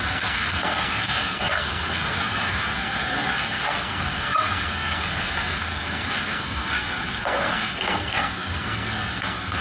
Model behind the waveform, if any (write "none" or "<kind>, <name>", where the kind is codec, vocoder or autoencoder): codec, SNAC